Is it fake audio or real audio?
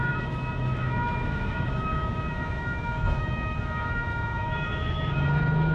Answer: fake